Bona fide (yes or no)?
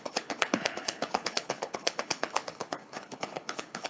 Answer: no